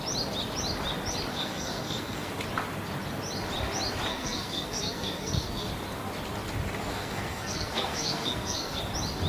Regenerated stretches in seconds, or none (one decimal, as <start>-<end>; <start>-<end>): 1.3-2.3; 4.1-5.7; 6.9-8.8